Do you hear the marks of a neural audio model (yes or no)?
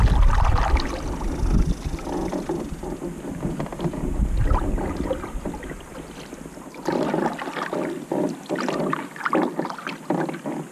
no